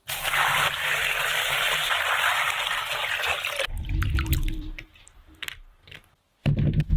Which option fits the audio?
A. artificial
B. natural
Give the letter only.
A